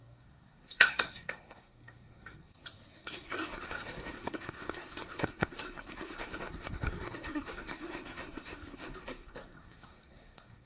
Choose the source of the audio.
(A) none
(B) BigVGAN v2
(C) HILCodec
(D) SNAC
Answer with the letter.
D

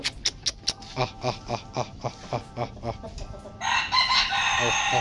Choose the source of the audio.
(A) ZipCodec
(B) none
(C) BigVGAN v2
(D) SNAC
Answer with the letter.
B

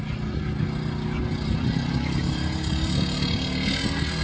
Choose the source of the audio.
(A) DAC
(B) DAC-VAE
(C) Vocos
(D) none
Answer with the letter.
D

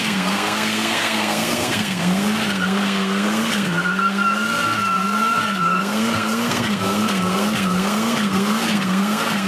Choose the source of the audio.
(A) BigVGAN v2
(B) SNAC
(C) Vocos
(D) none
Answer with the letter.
B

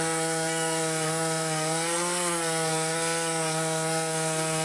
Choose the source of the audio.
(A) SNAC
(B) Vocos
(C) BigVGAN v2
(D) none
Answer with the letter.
A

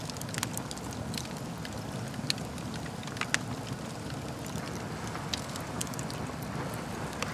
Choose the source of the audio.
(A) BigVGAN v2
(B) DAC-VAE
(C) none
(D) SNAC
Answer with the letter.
C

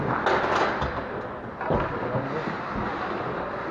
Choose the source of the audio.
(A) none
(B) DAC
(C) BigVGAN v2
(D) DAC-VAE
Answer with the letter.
A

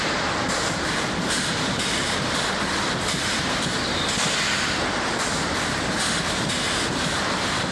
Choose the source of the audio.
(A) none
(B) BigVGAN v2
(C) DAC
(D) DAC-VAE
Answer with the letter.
B